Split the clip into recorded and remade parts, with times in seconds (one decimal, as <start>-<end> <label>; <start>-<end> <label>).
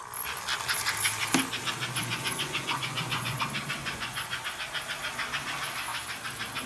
0.0-2.0 recorded; 2.0-3.4 remade; 3.4-3.8 recorded; 3.8-4.4 remade; 4.4-6.7 recorded